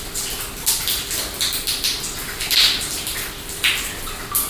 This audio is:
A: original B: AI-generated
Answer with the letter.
A